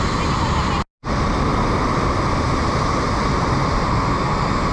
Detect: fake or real real